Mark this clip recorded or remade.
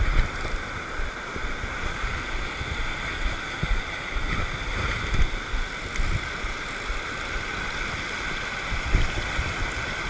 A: recorded